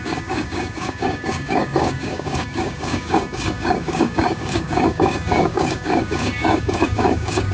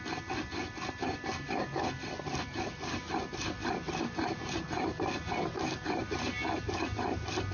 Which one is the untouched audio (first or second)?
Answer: second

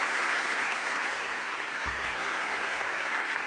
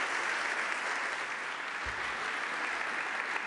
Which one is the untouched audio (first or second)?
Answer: second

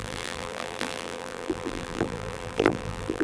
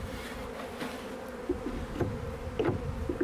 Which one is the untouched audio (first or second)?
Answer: second